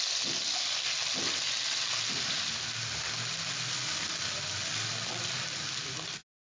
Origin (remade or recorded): recorded